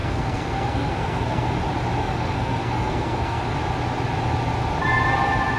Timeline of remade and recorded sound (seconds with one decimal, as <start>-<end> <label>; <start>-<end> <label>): 0.0-1.6 remade; 1.6-2.0 recorded; 2.0-3.4 remade; 3.4-5.6 recorded